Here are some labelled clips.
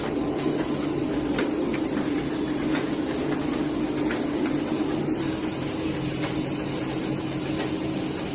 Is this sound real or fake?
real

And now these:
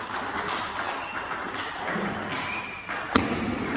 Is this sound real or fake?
real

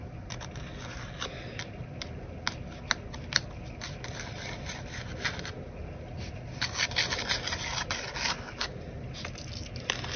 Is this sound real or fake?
real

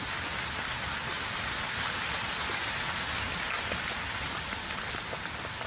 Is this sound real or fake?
real